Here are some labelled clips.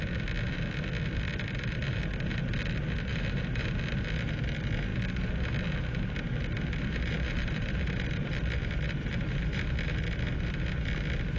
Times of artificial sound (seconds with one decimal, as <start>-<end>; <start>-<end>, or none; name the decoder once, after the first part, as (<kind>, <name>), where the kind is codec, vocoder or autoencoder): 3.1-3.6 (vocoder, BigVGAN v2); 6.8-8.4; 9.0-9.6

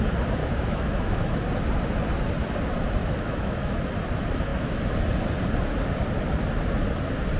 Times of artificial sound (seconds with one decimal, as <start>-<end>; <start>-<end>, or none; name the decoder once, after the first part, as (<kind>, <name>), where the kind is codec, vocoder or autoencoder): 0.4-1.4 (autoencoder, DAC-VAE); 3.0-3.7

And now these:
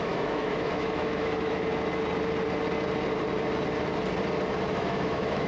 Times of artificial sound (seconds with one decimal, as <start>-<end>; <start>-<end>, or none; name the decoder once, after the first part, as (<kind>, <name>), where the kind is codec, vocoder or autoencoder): 0.0-1.7 (autoencoder, DAC-VAE); 4.7-5.5

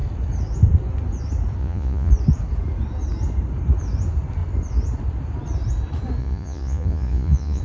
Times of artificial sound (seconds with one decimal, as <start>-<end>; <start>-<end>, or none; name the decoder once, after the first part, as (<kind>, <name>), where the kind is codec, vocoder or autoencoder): 1.6-2.1 (vocoder, Vocos); 6.2-7.6

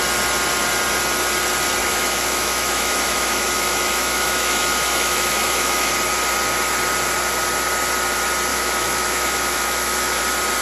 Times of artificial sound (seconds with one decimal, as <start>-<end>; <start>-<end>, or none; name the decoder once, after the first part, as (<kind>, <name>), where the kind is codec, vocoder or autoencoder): 1.8-5.9 (autoencoder, DAC-VAE); 8.5-10.2

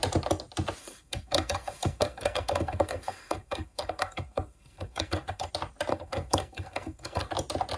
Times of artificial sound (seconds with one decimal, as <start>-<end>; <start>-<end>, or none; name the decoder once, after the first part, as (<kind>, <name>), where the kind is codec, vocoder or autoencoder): 0.8-5.5 (codec, SNAC); 5.9-7.3

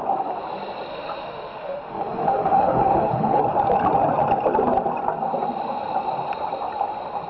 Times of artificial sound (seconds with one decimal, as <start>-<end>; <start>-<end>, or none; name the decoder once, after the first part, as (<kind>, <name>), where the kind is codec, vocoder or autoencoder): 0.9-3.4 (autoencoder, DAC-VAE)